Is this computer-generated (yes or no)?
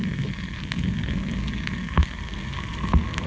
yes